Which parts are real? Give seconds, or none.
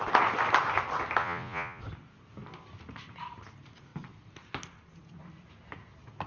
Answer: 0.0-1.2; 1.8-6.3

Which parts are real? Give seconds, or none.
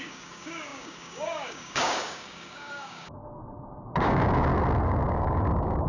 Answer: 3.2-4.0; 4.5-5.1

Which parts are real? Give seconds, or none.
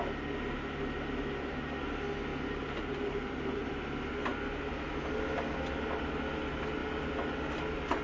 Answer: 0.0-2.3; 3.7-8.0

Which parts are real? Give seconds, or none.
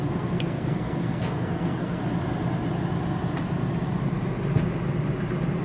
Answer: 2.0-5.6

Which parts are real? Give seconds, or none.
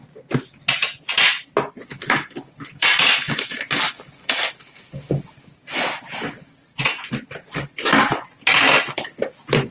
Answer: 0.0-9.7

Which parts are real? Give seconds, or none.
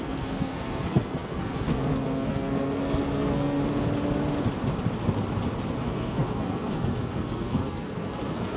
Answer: 3.6-5.7